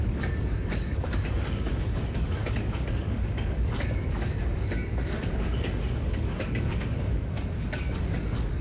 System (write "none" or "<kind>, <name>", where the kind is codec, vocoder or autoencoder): codec, DAC